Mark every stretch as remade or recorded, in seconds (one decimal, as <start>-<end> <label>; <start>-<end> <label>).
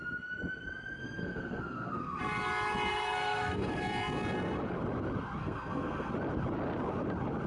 0.0-1.0 recorded; 1.0-2.2 remade; 2.2-2.9 recorded; 2.9-3.8 remade; 3.8-5.4 recorded; 5.4-6.1 remade; 6.1-7.5 recorded